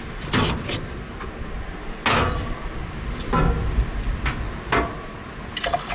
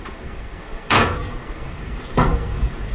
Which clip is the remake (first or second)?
second